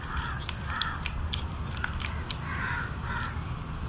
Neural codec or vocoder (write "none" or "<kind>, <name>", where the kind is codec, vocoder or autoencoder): none